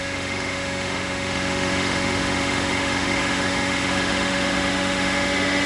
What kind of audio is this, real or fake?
fake